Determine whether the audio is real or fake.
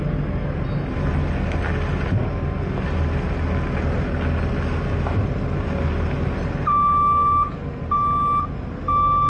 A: real